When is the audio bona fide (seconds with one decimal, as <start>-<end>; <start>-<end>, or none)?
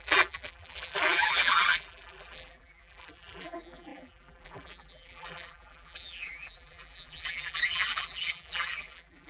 none